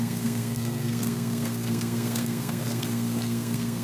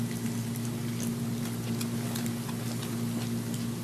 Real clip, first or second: second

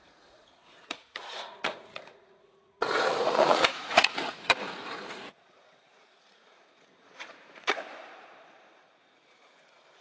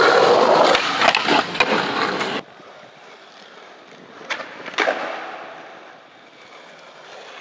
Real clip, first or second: second